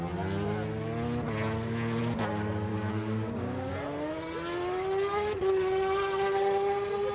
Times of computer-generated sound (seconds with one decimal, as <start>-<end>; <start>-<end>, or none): 2.7-3.7